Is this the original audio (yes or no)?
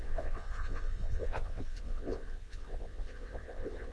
no